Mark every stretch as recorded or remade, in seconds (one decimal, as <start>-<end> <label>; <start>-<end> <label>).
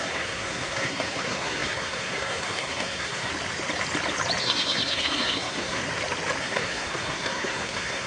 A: 0.0-3.3 remade; 3.3-4.4 recorded; 4.4-5.8 remade; 5.8-6.4 recorded; 6.4-8.1 remade